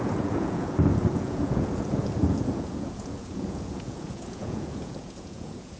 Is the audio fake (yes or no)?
yes